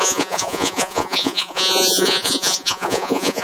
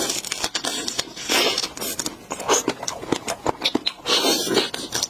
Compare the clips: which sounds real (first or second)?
second